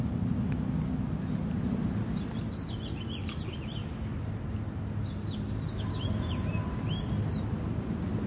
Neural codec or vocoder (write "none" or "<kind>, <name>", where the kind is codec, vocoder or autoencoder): none